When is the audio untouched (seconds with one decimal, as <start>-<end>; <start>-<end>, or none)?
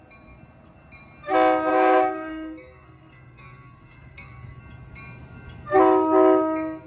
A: 0.0-1.7; 4.6-6.9